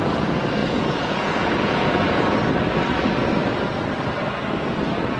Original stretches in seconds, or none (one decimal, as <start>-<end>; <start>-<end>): 0.0-0.6; 2.4-5.2